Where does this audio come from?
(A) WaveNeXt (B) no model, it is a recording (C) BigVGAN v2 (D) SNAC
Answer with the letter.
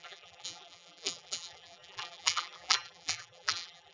C